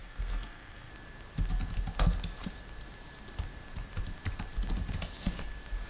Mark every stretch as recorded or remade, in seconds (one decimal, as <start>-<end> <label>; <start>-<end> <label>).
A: 0.0-0.9 remade; 0.9-5.9 recorded